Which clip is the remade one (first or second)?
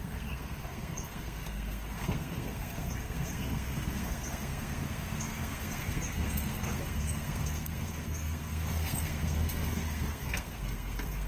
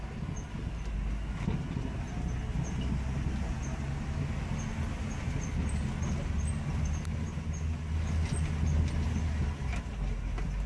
first